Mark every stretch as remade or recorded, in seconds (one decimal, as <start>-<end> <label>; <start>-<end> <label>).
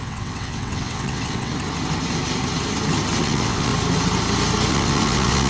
0.0-1.5 remade; 1.5-3.2 recorded; 3.2-3.7 remade; 3.7-4.7 recorded; 4.7-5.5 remade